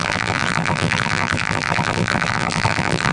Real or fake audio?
fake